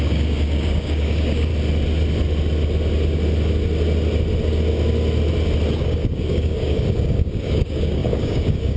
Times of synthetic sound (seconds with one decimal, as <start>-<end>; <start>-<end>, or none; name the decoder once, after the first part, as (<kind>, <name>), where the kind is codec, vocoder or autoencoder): 0.0-1.5 (codec, DAC); 5.7-8.8

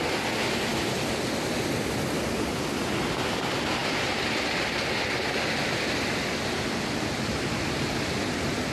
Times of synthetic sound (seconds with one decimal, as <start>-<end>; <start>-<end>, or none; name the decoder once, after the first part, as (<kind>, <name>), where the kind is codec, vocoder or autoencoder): none

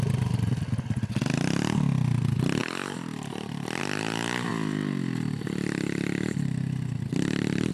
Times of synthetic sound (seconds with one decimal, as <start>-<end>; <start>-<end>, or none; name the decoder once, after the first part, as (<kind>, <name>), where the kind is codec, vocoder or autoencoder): none

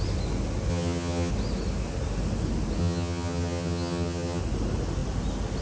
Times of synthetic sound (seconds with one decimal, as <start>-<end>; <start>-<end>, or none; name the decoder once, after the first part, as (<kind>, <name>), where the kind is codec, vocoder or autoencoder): 0.7-1.3 (vocoder, HiFi-GAN); 2.8-4.4